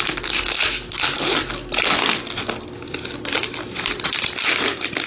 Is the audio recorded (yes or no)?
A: yes